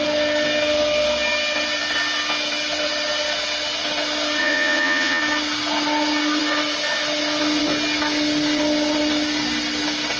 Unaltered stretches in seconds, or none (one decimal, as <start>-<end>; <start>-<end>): 0.0-4.4; 5.2-10.2